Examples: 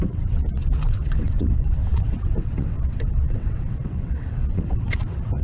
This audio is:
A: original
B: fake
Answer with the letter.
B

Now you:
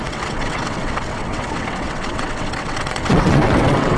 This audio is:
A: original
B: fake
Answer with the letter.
B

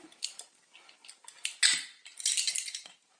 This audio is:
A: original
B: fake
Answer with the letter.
A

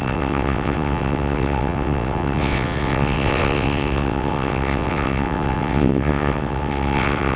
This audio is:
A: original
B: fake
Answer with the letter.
B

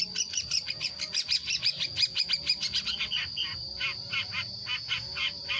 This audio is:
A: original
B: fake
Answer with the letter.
A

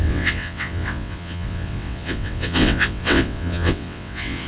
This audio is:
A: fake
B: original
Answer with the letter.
A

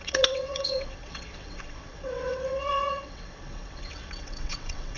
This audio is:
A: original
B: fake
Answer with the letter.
B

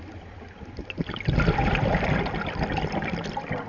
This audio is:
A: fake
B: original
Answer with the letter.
B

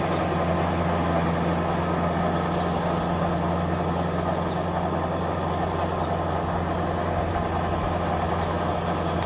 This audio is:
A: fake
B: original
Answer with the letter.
B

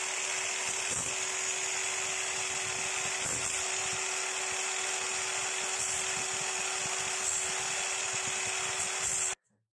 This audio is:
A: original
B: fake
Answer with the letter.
A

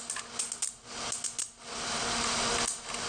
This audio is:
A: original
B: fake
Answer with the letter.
A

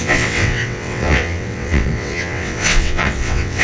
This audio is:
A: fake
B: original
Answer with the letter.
A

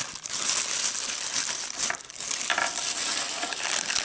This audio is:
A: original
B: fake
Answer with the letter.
A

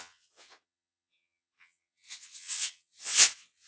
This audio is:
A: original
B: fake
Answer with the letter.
B